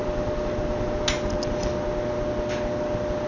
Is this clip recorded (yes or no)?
yes